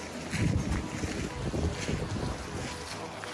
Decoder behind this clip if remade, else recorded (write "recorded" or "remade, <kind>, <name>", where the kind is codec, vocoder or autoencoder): recorded